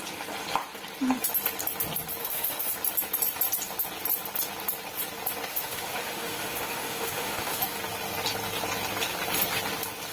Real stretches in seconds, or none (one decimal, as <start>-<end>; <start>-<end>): 0.0-2.2; 2.7-5.5; 7.8-10.1